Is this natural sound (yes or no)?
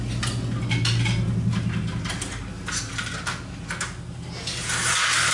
yes